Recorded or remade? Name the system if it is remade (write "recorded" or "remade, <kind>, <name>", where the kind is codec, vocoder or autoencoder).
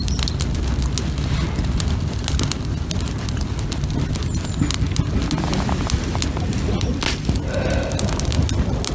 recorded